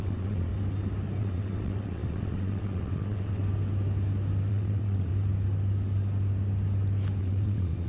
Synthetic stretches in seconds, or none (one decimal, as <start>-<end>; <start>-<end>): 0.0-0.5; 1.2-3.4; 4.5-5.1; 7.2-7.9